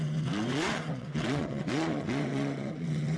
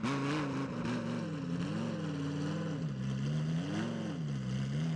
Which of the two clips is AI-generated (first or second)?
first